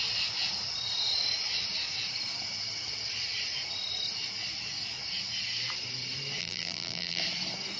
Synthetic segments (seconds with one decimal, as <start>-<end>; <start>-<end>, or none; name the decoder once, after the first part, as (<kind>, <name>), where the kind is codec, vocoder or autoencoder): 6.4-7.2 (vocoder, BigVGAN v2)